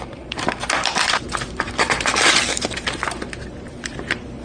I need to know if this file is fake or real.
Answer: fake